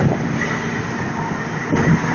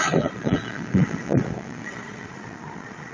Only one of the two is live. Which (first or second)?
first